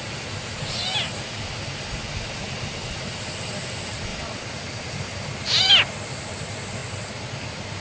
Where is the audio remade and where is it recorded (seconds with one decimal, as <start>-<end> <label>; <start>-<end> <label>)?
0.0-7.8 recorded

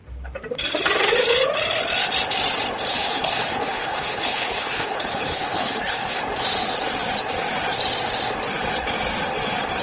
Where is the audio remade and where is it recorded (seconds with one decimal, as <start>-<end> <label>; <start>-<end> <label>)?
0.0-2.9 recorded; 2.9-6.2 remade; 6.2-9.8 recorded

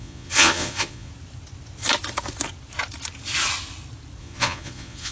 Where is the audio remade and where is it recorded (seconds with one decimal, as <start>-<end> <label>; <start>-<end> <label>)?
0.0-1.1 remade; 1.1-4.2 recorded; 4.2-5.1 remade

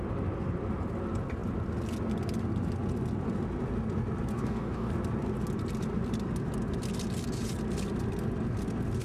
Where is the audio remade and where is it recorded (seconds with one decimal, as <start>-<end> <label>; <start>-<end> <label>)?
0.0-4.3 recorded; 4.3-4.9 remade; 4.9-9.0 recorded

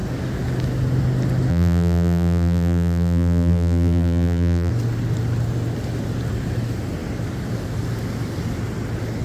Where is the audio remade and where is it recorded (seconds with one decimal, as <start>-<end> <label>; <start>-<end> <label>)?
0.0-1.5 recorded; 1.5-4.7 remade; 4.7-9.2 recorded

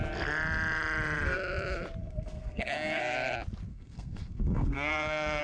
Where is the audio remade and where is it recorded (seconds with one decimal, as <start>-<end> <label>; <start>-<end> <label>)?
0.0-2.0 recorded; 2.0-3.0 remade; 3.0-3.7 recorded; 3.7-5.4 remade

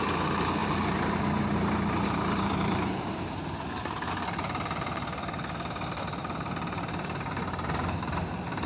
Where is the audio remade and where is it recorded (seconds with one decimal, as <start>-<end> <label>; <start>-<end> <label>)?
0.0-0.6 recorded; 0.6-4.1 remade; 4.1-6.2 recorded; 6.2-8.7 remade

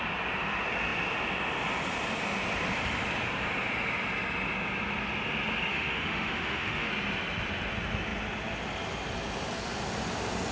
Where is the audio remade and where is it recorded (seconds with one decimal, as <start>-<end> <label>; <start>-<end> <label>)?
0.0-5.7 recorded; 5.7-6.9 remade; 6.9-10.5 recorded